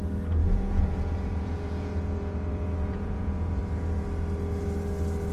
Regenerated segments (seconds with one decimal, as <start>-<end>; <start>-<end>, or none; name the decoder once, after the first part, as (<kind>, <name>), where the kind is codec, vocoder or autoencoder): 0.4-3.6 (vocoder, Vocos)